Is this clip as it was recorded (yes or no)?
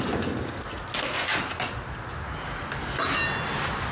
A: yes